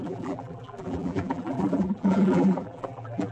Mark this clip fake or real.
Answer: fake